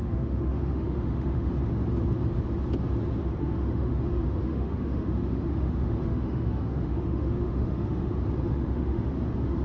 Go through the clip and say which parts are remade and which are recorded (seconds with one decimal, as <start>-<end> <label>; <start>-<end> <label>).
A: 0.0-1.5 remade; 1.5-3.4 recorded; 3.4-8.1 remade; 8.1-8.5 recorded; 8.5-9.2 remade; 9.2-9.6 recorded